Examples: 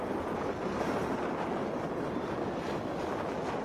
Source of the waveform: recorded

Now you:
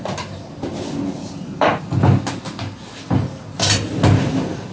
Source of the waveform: recorded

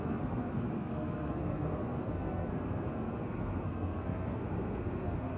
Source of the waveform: remade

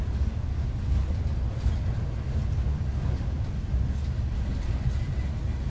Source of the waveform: recorded